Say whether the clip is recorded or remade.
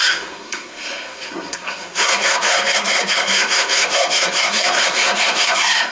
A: remade